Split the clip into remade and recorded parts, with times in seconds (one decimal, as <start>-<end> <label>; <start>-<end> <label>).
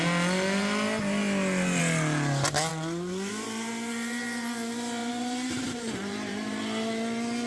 0.0-5.0 recorded; 5.0-6.6 remade; 6.6-7.5 recorded